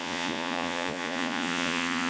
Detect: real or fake fake